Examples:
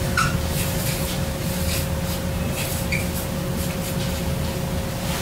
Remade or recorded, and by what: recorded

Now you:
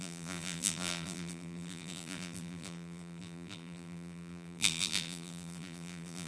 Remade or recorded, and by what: remade, vocoder, BigVGAN v2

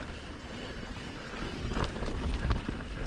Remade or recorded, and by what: remade, vocoder, BigVGAN v2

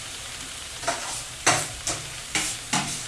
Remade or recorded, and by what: remade, vocoder, BigVGAN v2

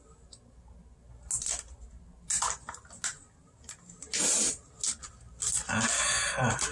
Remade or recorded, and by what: recorded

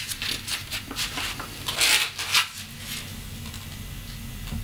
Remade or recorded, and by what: recorded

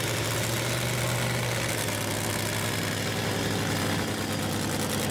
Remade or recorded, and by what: recorded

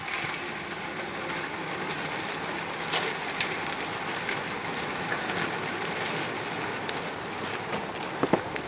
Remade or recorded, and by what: recorded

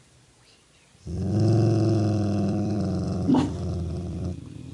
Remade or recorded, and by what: remade, vocoder, BigVGAN v2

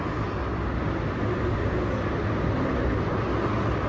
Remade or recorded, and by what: recorded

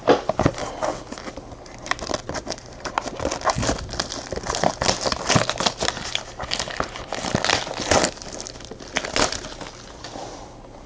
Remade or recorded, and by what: recorded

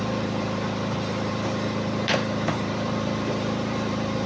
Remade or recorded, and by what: remade, vocoder, BigVGAN v2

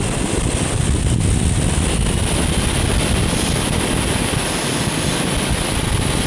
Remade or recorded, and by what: recorded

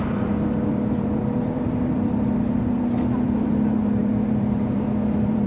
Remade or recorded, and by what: remade, vocoder, BigVGAN v2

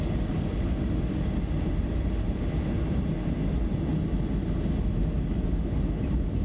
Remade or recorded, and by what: recorded